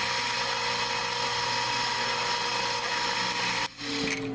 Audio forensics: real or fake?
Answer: real